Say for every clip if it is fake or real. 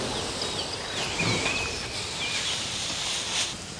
real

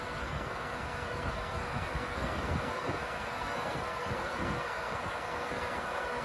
fake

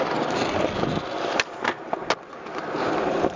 real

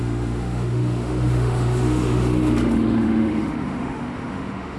fake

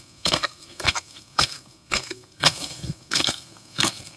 fake